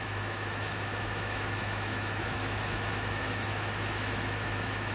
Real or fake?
fake